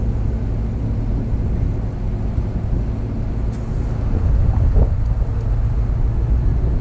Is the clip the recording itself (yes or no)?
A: yes